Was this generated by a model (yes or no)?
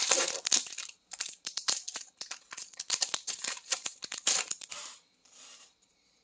yes